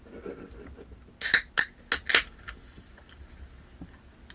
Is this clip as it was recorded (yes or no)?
yes